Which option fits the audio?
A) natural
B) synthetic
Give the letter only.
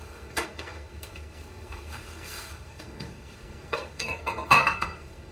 B